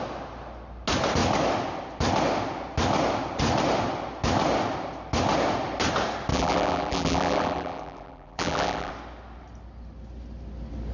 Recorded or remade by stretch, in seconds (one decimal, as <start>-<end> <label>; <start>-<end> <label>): 0.0-6.3 recorded; 6.3-8.9 remade; 8.9-10.9 recorded